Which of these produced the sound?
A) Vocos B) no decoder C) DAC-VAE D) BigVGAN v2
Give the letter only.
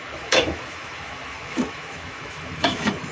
C